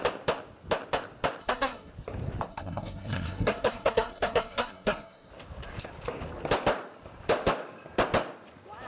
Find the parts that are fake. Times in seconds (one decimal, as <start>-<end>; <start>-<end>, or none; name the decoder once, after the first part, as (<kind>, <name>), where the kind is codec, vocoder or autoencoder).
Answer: 1.4-1.9 (codec, SNAC); 2.5-5.3